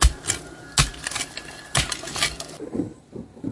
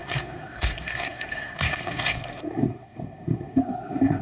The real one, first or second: first